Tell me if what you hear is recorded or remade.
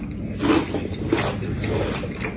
recorded